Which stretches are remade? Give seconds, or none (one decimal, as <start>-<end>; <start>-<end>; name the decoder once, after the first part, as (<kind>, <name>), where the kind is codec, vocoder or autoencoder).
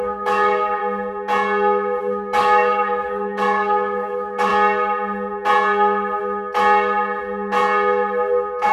0.0-0.8 (codec, DAC); 2.0-4.5